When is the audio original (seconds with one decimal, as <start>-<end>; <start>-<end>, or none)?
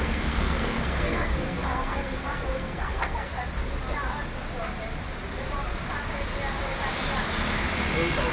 3.3-8.3